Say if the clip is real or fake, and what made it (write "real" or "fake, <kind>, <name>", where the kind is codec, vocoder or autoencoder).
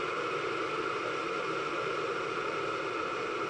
real